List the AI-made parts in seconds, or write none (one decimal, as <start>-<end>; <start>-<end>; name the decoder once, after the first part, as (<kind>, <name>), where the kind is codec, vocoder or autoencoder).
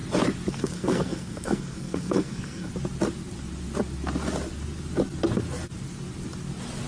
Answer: 0.5-2.7 (codec, SNAC)